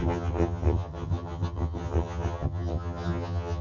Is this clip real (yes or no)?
no